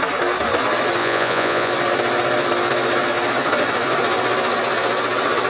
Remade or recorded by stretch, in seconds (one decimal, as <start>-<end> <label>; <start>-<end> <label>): 0.0-1.0 recorded; 1.0-1.7 remade; 1.7-5.5 recorded

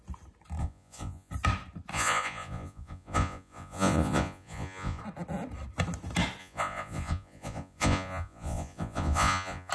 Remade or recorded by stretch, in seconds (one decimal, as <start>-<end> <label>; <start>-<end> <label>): 0.0-0.6 recorded; 0.6-1.3 remade; 1.3-1.9 recorded; 1.9-5.0 remade; 5.0-6.4 recorded; 6.4-9.7 remade

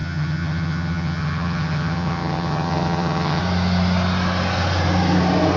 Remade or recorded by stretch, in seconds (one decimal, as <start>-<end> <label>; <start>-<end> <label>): 0.0-3.4 remade; 3.4-5.6 recorded

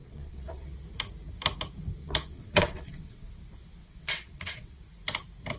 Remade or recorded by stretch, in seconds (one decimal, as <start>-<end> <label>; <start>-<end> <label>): 0.0-0.7 remade; 0.7-2.0 recorded; 2.0-3.3 remade; 3.3-3.8 recorded; 3.8-4.8 remade; 4.8-5.6 recorded

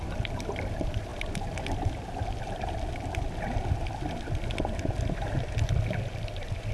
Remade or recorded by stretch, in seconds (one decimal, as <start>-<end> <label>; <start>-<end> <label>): 0.0-6.7 recorded

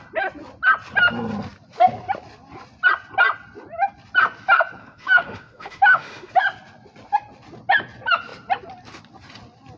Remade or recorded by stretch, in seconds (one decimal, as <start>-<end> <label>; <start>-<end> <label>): 0.0-4.8 recorded; 4.8-6.3 remade; 6.3-9.8 recorded